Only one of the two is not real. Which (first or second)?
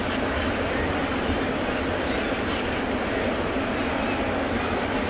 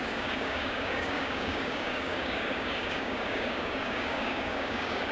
second